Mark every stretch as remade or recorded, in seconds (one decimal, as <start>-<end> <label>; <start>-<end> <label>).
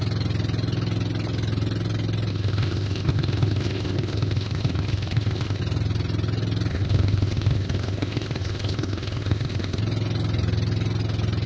0.0-2.3 recorded; 2.3-5.6 remade; 5.6-6.7 recorded; 6.7-9.8 remade; 9.8-11.5 recorded